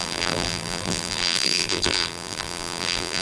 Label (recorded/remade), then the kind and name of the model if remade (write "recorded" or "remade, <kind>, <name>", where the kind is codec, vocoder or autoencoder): remade, vocoder, BigVGAN v2